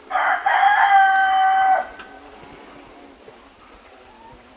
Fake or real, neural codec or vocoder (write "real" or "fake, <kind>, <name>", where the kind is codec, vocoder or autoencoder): real